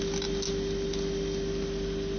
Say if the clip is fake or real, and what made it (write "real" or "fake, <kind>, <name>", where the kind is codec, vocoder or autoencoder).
real